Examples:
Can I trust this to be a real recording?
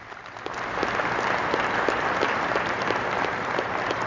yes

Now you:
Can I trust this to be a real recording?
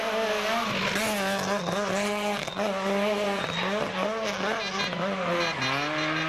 yes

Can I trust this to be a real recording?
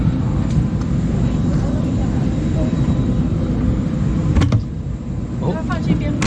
yes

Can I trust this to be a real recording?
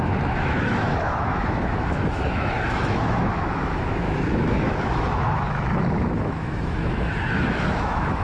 no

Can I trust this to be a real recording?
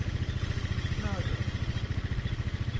yes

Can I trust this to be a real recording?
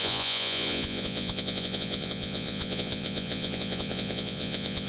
no